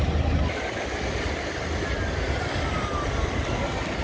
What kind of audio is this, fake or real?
real